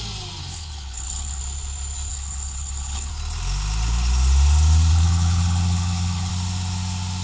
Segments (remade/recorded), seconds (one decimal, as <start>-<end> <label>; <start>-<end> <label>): 0.0-0.4 recorded; 0.4-1.4 remade; 1.4-2.1 recorded; 2.1-3.1 remade; 3.1-4.9 recorded; 4.9-6.3 remade; 6.3-7.2 recorded